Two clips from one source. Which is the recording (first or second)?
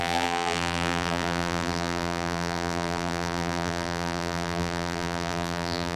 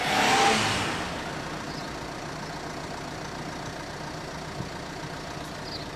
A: second